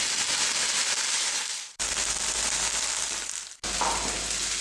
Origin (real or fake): real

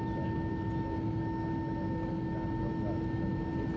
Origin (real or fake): real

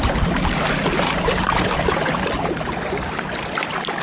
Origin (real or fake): real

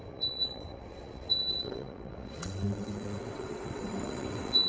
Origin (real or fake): fake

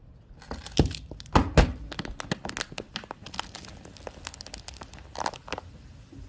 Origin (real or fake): real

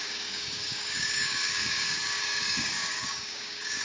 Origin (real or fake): fake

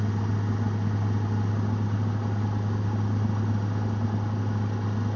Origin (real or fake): real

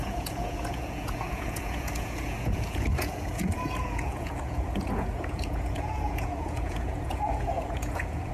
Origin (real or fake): fake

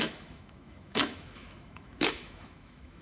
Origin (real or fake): fake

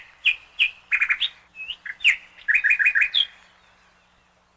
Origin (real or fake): real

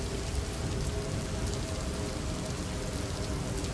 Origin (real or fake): real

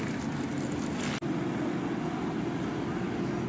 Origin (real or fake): real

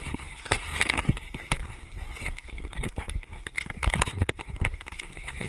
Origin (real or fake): fake